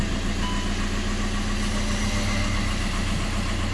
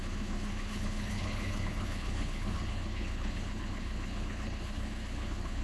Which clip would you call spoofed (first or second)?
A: second